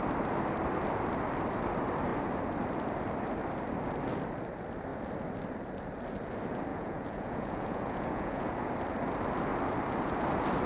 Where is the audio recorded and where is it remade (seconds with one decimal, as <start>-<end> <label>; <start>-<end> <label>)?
0.0-6.7 recorded; 6.7-8.5 remade; 8.5-10.7 recorded